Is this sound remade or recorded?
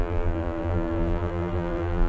remade